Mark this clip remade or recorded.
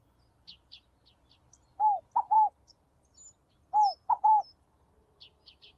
recorded